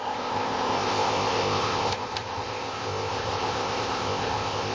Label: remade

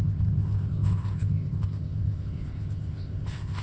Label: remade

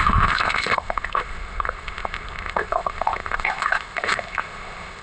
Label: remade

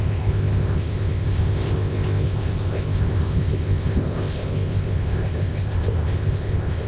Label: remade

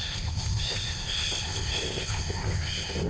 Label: remade